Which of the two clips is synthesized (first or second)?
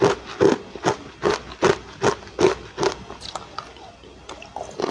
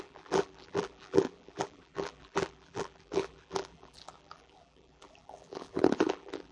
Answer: second